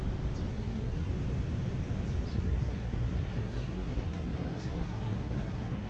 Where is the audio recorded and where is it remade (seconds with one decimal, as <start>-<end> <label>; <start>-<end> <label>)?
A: 0.0-0.5 recorded; 0.5-1.1 remade; 1.1-2.3 recorded; 2.3-5.9 remade

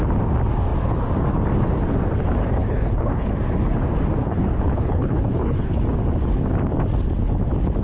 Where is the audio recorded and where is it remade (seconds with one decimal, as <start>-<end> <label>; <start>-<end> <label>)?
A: 0.0-2.4 recorded; 2.4-3.3 remade; 3.3-4.2 recorded; 4.2-5.8 remade; 5.8-7.8 recorded

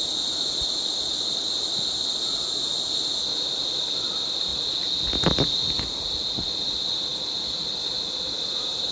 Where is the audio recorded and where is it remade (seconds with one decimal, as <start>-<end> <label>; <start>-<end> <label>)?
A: 0.0-8.9 recorded

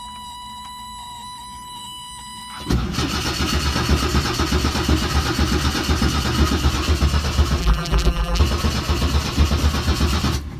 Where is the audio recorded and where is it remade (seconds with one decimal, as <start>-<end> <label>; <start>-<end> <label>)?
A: 0.0-7.6 recorded; 7.6-8.4 remade; 8.4-10.6 recorded

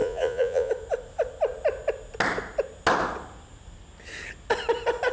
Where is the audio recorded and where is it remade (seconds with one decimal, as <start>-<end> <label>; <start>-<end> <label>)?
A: 0.0-0.7 remade; 0.7-5.1 recorded